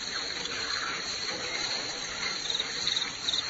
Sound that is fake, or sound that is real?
fake